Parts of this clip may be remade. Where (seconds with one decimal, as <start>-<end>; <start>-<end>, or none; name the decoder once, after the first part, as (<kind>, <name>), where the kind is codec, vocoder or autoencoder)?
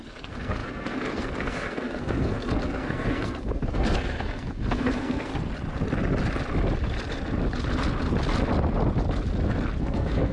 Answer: 0.0-5.3 (codec, SNAC); 9.8-10.3